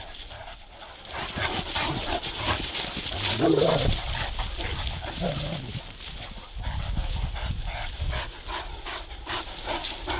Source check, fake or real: real